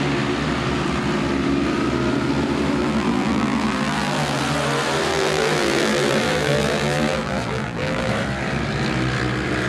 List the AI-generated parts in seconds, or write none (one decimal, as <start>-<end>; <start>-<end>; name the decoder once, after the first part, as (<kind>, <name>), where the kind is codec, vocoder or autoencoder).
2.8-4.4 (vocoder, BigVGAN v2); 5.1-8.1